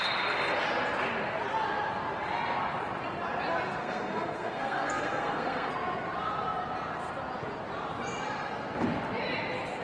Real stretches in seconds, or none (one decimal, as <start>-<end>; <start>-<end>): 0.0-3.8; 5.7-9.8